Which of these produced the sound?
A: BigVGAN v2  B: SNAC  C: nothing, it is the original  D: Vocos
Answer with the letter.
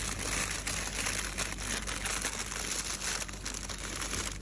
C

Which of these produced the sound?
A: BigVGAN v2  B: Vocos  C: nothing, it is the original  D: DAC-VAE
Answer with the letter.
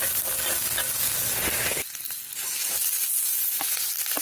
C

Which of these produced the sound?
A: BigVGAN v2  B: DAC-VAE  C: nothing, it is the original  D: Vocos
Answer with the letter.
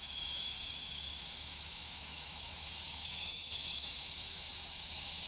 B